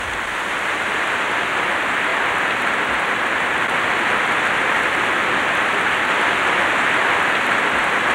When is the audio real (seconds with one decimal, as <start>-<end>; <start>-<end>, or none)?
0.0-8.1